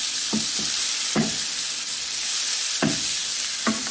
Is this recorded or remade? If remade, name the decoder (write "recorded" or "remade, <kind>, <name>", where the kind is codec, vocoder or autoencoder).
recorded